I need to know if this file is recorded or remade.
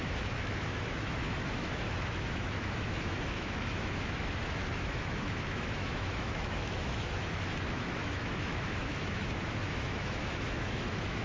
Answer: remade